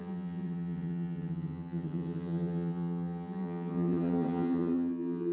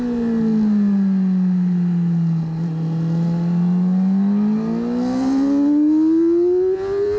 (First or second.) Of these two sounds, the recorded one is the second